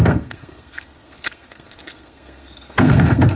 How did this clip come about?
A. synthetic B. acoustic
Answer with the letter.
A